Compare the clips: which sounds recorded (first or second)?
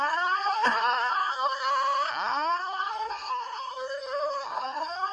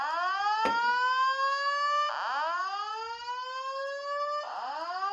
second